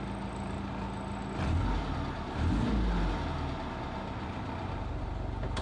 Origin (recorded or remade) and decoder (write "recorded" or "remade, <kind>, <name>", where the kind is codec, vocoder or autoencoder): recorded